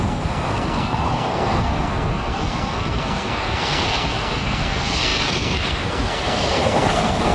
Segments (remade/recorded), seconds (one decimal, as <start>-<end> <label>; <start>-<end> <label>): 0.0-7.3 remade